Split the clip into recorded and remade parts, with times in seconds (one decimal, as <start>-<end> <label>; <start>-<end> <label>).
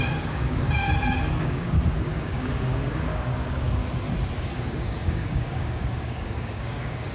0.0-0.8 remade; 0.8-1.4 recorded; 1.4-3.8 remade; 3.8-4.4 recorded; 4.4-7.1 remade